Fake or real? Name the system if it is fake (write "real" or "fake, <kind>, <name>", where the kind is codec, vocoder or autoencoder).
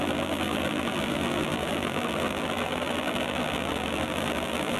fake, vocoder, BigVGAN v2